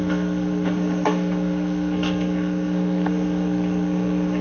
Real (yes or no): no